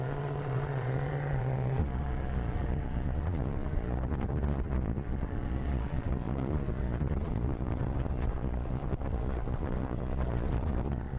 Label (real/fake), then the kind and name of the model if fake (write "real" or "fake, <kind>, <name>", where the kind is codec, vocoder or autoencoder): fake, vocoder, Vocos